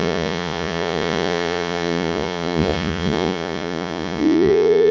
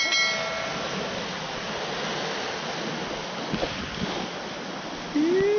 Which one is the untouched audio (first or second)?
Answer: second